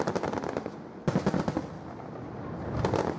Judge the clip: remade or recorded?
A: recorded